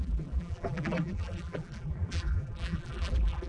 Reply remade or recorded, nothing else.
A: remade